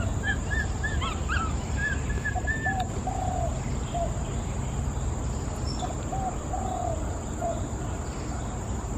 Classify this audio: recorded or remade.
remade